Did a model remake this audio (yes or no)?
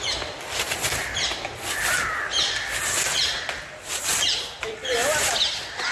no